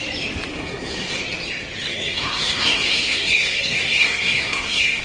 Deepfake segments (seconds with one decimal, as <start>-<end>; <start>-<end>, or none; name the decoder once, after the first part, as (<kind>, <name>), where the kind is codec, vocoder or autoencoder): 0.5-1.2 (codec, SNAC); 1.9-5.0